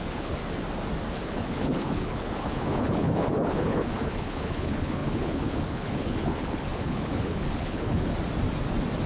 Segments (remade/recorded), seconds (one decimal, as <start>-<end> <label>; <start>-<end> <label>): 0.0-0.4 remade; 0.4-1.1 recorded; 1.1-8.1 remade; 8.1-9.1 recorded